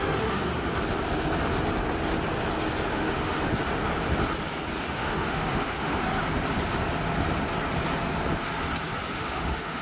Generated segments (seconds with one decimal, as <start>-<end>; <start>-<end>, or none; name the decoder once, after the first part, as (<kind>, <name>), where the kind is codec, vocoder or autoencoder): 0.0-0.5 (autoencoder, DAC-VAE); 2.9-3.5; 4.9-6.0; 9.1-9.8